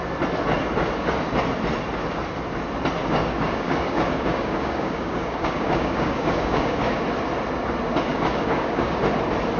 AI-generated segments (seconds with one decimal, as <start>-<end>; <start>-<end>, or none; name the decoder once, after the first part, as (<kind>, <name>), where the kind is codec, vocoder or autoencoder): 3.0-7.0 (codec, DAC); 8.1-9.0